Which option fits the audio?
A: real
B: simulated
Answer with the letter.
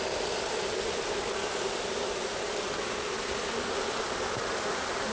A